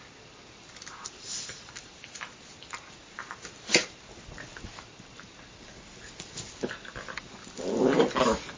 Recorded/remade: recorded